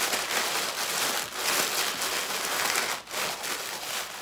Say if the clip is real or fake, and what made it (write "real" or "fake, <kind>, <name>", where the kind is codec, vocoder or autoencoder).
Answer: real